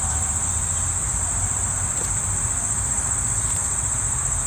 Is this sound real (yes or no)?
yes